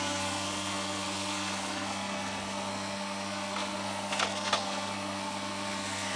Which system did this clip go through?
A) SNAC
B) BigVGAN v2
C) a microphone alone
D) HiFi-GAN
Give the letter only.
A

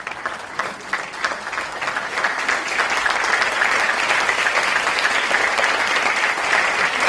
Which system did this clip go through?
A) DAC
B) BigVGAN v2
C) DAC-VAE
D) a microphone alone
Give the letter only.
D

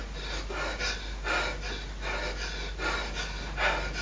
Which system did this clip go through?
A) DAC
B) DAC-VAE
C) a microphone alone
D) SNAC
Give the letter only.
C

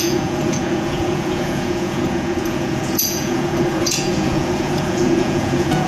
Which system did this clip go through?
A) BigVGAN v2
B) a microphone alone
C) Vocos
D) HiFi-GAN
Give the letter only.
C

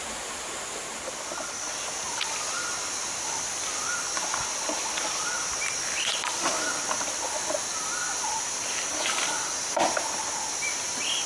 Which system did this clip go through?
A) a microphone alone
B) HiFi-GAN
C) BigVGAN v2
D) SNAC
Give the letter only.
A